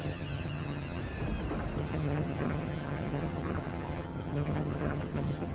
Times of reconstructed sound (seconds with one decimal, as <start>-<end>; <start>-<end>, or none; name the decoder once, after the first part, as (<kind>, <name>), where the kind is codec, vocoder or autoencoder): 0.0-1.0 (vocoder, HiFi-GAN); 1.8-5.5